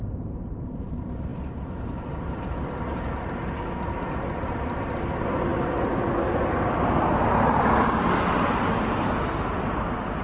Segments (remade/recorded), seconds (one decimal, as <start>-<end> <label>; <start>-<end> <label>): 0.0-10.2 recorded